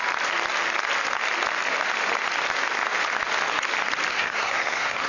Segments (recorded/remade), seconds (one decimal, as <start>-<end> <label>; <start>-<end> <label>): 0.0-4.1 recorded; 4.1-5.1 remade

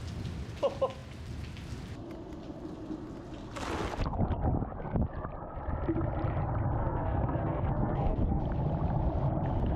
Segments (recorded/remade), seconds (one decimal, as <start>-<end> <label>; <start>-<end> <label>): 0.0-6.8 recorded; 6.8-8.4 remade; 8.4-9.8 recorded

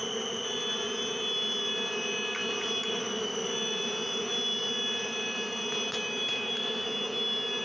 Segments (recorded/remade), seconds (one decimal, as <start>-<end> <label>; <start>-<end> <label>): 0.0-7.6 recorded

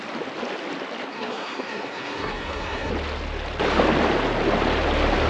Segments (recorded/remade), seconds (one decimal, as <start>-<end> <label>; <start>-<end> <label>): 0.0-1.1 recorded; 1.1-2.9 remade; 2.9-5.3 recorded

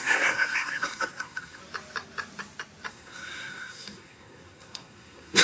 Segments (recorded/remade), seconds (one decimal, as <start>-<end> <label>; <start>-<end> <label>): 0.0-1.6 remade; 1.6-2.9 recorded; 2.9-5.4 remade

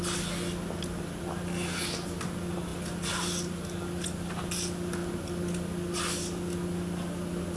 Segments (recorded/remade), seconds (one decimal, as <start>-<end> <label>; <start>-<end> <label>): 0.0-7.6 recorded